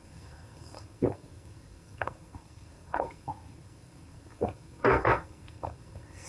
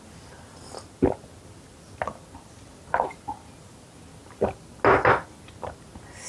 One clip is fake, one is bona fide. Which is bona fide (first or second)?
second